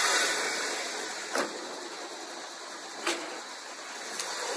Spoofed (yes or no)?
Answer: no